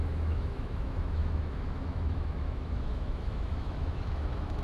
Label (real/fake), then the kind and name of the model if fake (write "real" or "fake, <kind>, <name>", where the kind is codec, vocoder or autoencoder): fake, autoencoder, DAC-VAE